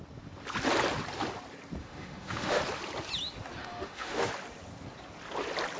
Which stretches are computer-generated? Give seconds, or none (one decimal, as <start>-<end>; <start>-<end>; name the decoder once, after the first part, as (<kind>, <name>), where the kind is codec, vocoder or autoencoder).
1.8-2.6 (autoencoder, DAC-VAE); 3.6-4.3